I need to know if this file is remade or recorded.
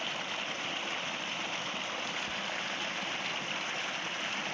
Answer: recorded